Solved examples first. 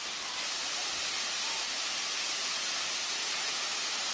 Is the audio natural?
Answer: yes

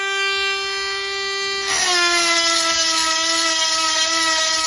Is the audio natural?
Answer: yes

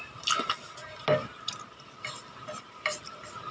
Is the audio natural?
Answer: yes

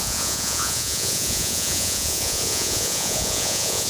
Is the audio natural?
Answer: no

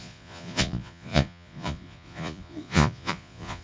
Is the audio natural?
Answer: no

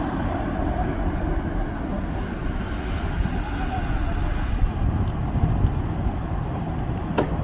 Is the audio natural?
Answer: yes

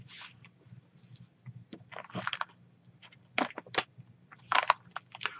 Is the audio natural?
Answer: yes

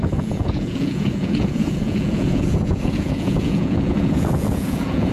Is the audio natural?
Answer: no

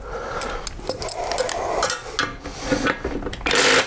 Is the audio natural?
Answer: yes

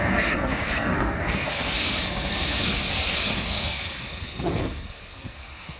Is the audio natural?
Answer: no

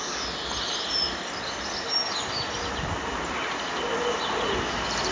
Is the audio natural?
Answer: yes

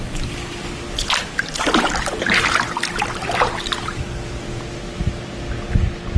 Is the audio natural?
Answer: yes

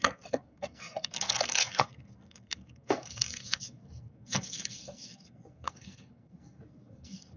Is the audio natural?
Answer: no